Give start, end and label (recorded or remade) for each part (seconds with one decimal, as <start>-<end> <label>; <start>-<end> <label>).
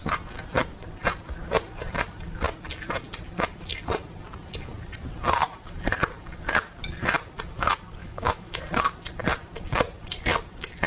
0.0-8.0 recorded; 8.0-8.6 remade; 8.6-10.9 recorded